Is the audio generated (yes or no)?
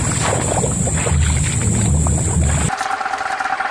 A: no